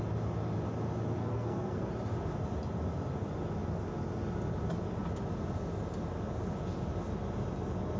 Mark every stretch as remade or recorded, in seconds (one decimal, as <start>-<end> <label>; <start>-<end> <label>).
0.0-1.2 recorded; 1.2-1.9 remade; 1.9-8.0 recorded